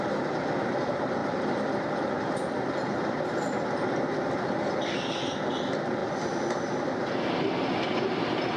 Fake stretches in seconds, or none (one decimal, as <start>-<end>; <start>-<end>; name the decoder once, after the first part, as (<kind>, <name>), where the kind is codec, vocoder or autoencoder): none